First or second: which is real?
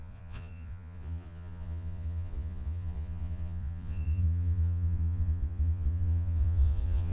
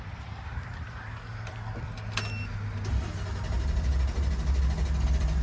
second